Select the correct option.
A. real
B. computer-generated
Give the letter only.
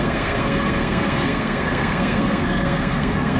B